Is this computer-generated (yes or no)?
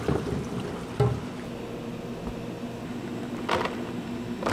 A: no